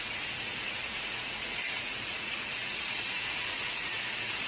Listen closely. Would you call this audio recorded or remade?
remade